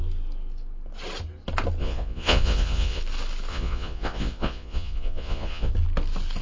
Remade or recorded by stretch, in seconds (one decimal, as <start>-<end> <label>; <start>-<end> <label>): 0.0-1.8 recorded; 1.8-3.0 remade; 3.0-3.5 recorded; 3.5-5.7 remade; 5.7-6.4 recorded